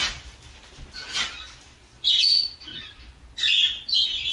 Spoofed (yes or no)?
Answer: no